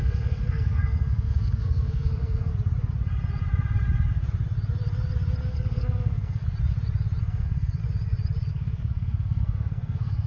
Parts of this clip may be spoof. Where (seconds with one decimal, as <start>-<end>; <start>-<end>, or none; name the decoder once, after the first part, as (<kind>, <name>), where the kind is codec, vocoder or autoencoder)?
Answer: 0.0-2.5 (codec, SNAC); 5.5-6.4; 7.2-7.8; 8.5-10.3